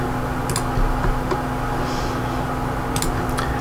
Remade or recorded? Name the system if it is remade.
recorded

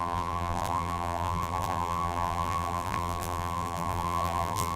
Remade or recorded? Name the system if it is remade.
remade, vocoder, BigVGAN v2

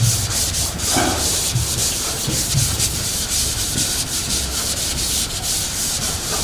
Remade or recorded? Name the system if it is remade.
remade, vocoder, BigVGAN v2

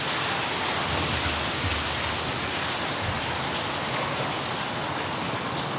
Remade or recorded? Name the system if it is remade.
recorded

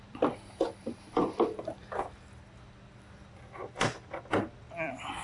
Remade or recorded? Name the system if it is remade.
remade, vocoder, BigVGAN v2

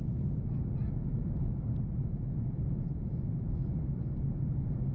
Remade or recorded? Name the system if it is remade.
recorded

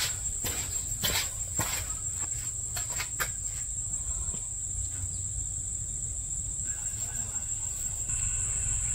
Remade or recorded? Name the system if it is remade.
recorded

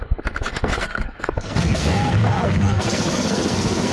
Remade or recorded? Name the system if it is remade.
remade, codec, SNAC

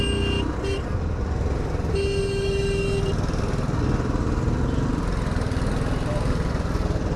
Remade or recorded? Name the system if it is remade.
recorded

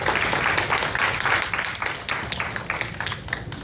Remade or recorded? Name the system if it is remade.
recorded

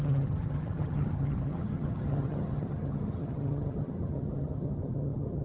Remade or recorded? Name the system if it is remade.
remade, vocoder, HiFi-GAN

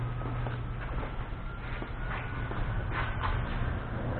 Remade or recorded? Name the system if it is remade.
recorded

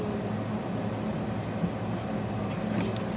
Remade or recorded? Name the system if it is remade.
recorded